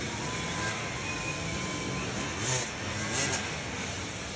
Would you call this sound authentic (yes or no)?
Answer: yes